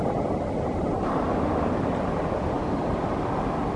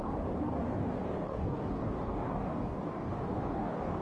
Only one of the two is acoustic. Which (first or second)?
first